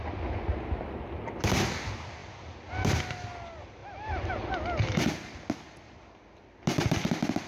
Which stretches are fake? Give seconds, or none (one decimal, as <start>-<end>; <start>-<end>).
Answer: 3.8-4.3